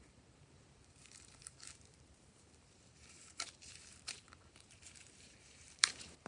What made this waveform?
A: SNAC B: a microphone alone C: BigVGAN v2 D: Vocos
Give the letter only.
C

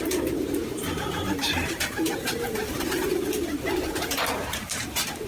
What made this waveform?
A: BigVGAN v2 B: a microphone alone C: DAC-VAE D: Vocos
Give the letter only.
A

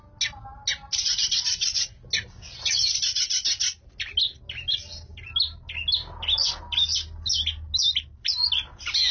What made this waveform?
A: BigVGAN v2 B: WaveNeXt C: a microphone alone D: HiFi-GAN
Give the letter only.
C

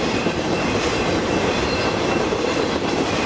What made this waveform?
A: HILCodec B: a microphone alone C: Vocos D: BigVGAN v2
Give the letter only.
D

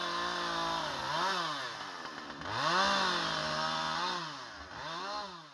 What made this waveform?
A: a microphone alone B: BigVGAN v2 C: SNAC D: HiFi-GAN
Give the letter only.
A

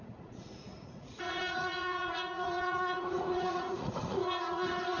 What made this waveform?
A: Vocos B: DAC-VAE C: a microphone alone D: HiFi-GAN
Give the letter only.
A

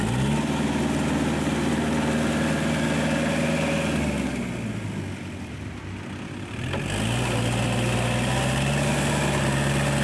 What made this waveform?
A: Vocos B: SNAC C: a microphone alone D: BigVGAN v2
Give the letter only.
C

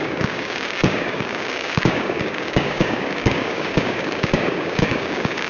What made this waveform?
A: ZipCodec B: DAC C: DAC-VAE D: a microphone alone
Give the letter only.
B